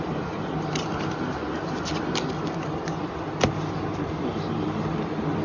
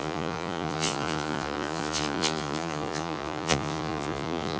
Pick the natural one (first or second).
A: first